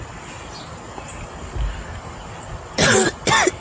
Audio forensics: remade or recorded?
recorded